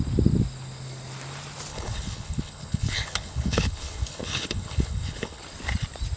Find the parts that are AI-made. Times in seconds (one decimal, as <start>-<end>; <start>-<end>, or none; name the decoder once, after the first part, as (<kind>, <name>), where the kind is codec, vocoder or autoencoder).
1.7-5.4 (codec, HILCodec)